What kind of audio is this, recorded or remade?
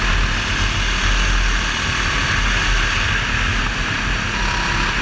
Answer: recorded